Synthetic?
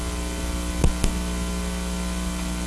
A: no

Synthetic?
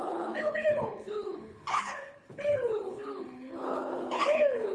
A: yes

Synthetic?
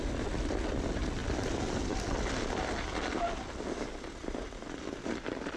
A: no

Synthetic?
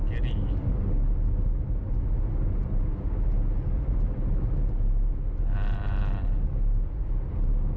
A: no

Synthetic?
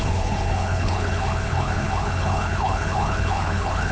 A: yes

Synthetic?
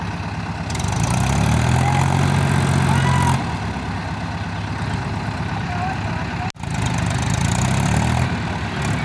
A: no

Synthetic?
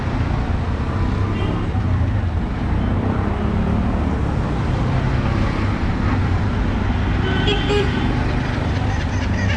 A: no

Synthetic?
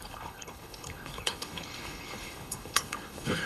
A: yes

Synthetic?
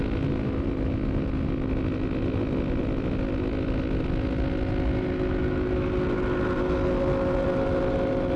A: no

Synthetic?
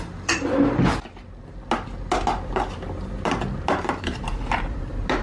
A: no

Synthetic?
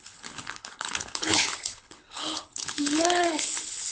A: yes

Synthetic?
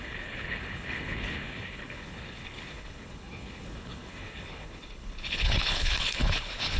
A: yes